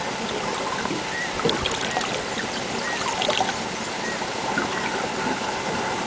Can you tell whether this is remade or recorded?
recorded